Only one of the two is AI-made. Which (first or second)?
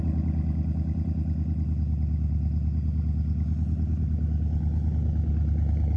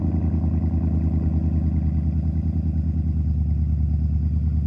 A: first